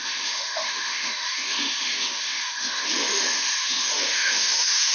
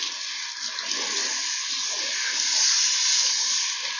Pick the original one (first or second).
second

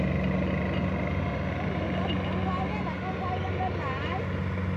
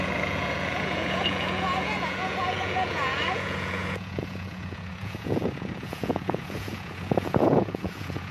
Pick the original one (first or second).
first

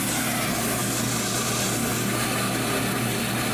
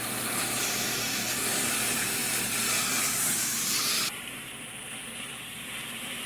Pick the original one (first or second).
first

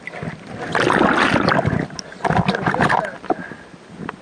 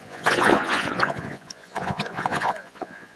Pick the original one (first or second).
first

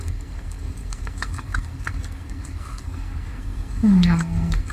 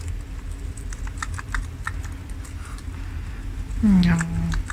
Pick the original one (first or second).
second